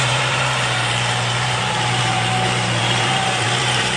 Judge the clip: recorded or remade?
remade